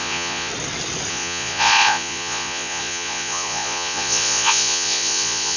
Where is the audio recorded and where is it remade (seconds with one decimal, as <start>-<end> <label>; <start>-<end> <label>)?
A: 0.0-0.5 remade; 0.5-1.1 recorded; 1.1-5.6 remade